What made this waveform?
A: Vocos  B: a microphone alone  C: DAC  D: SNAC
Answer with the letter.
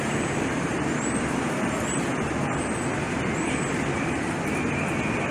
B